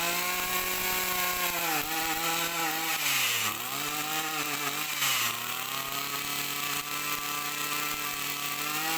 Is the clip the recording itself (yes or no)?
yes